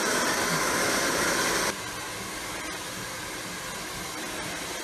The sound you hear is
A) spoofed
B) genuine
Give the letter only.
B